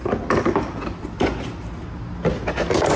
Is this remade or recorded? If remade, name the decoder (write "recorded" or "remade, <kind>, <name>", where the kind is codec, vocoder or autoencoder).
recorded